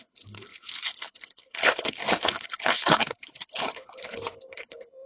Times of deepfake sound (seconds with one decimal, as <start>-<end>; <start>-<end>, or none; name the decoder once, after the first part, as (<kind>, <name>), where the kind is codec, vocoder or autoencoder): 0.0-5.1 (codec, HILCodec)